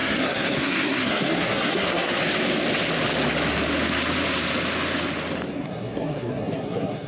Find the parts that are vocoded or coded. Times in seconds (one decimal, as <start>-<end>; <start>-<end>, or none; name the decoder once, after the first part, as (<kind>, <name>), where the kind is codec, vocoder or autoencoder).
0.0-2.2 (codec, SNAC); 5.5-7.1